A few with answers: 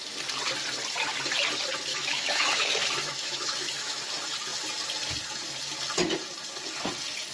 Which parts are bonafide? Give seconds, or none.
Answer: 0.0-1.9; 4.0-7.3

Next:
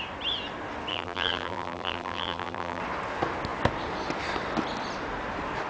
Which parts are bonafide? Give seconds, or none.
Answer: 0.0-0.9; 2.8-5.7

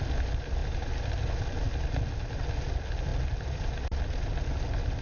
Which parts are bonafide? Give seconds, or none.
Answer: 0.0-5.0

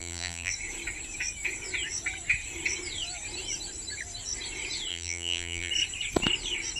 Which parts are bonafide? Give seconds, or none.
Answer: 0.5-4.9; 5.7-6.8

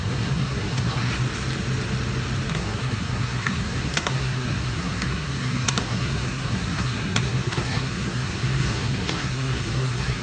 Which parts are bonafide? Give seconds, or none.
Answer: 1.1-2.5

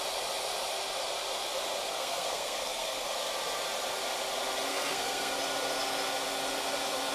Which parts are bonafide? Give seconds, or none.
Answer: 0.0-1.9; 3.1-4.7; 5.4-7.1